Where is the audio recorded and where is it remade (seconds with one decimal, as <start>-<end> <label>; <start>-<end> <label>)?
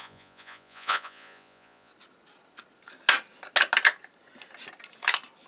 0.0-1.9 remade; 1.9-5.5 recorded